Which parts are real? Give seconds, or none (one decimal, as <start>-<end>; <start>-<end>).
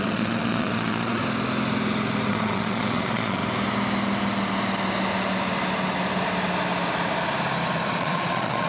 1.2-2.3; 3.4-7.9